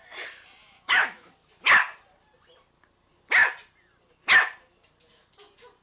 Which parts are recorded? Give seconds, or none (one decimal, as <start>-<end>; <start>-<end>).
0.0-0.6; 1.3-5.8